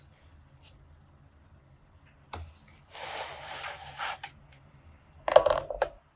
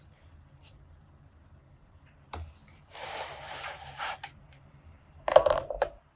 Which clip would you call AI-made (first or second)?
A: second